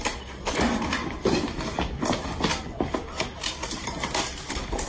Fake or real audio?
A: real